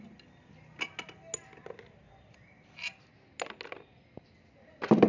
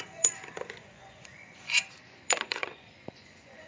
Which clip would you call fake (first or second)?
second